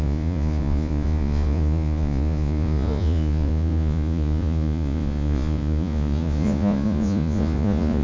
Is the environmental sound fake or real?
fake